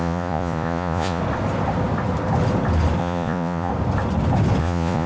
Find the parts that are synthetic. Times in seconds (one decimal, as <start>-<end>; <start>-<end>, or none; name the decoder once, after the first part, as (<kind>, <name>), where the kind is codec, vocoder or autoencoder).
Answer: 0.0-1.2 (vocoder, Vocos); 3.0-3.7; 4.6-5.1